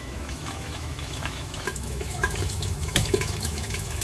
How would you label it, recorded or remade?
remade